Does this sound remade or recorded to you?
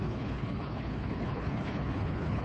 remade